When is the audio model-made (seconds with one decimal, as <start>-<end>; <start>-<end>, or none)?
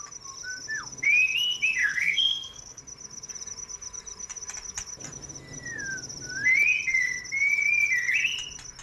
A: 1.8-2.8